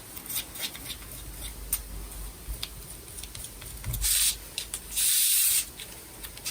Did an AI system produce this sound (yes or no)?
no